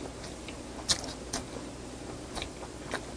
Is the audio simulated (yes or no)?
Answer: no